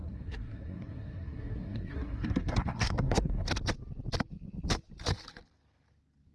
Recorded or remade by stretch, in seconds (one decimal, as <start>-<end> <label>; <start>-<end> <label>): 0.0-3.6 remade; 3.6-6.3 recorded